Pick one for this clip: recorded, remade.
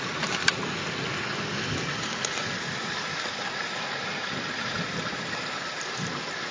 recorded